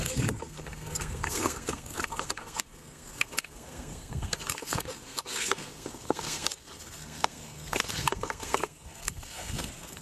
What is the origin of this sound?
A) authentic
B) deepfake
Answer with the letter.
B